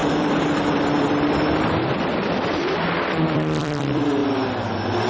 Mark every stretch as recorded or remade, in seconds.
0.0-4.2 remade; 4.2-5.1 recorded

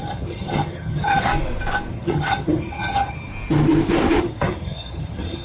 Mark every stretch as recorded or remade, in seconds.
0.0-1.3 remade; 1.3-1.9 recorded; 1.9-3.3 remade; 3.3-4.2 recorded; 4.2-5.4 remade

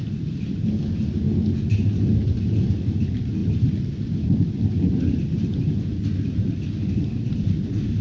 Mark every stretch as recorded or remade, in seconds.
0.0-8.0 recorded